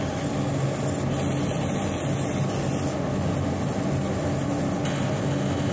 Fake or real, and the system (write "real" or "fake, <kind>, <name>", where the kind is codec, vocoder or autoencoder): real